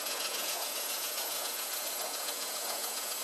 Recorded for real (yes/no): no